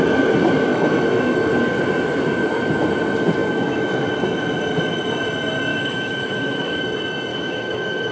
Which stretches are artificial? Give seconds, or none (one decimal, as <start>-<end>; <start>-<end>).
0.7-1.5; 3.4-4.0; 5.7-6.8; 7.3-8.1

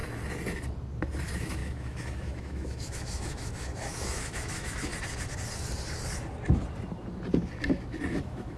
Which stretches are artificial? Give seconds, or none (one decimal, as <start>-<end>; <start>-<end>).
1.2-4.9; 8.1-8.6

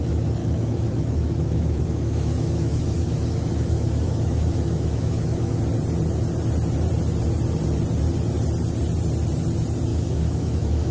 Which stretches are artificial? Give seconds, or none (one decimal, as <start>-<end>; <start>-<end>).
0.4-5.6; 9.9-10.9